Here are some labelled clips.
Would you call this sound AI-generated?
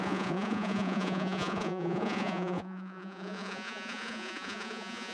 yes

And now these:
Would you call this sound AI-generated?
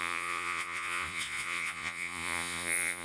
yes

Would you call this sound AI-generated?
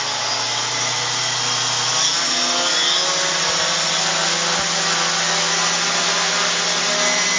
no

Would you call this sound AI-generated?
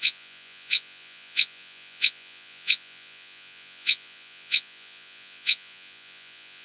yes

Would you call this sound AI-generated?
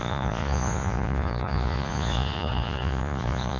yes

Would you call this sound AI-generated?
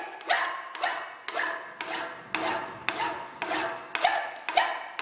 no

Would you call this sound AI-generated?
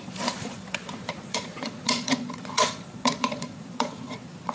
yes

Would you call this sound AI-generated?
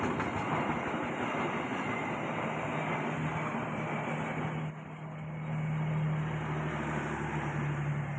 no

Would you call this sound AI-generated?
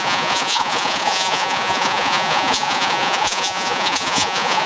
yes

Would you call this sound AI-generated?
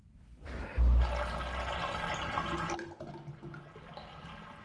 no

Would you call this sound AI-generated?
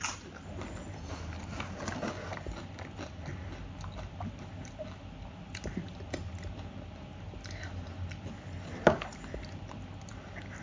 no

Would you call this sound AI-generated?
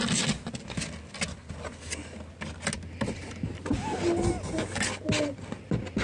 no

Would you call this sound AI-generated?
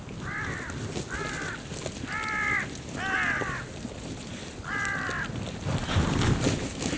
no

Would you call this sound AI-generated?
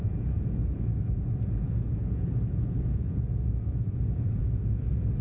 yes